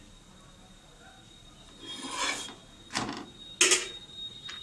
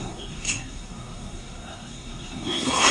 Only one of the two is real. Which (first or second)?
first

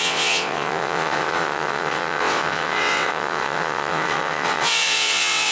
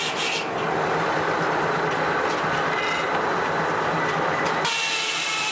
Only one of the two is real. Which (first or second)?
second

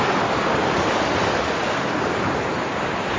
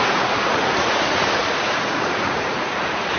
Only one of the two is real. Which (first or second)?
first